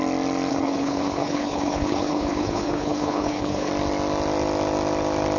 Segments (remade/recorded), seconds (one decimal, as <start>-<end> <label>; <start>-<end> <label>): 0.0-0.5 recorded; 0.5-3.7 remade; 3.7-5.4 recorded